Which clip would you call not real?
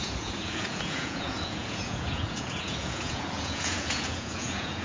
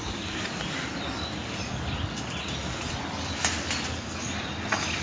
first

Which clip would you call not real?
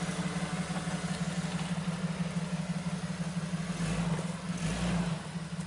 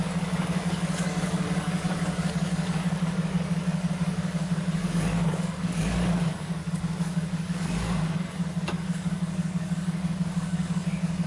second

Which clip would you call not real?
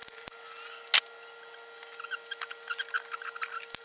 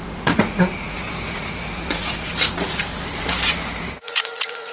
second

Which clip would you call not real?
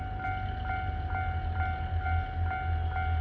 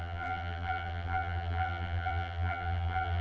second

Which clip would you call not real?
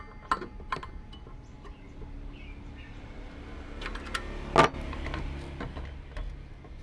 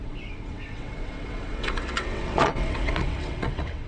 second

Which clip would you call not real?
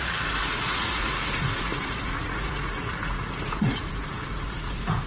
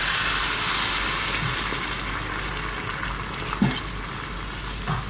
first